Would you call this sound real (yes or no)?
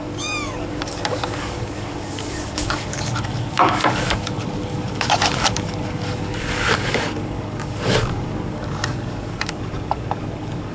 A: no